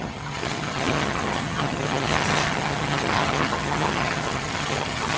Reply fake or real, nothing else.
fake